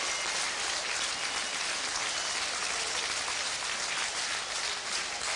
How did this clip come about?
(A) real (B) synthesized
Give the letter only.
A